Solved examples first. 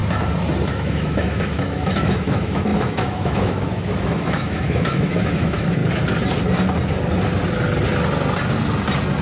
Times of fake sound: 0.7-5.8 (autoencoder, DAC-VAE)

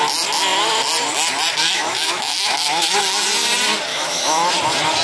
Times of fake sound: 1.6-3.0 (autoencoder, DAC-VAE); 3.9-4.5

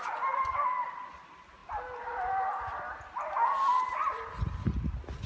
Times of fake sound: none

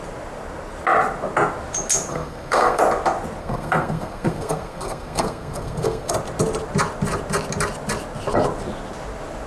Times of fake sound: 2.1-2.8 (codec, SNAC); 3.4-6.1